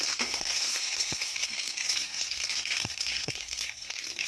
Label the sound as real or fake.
fake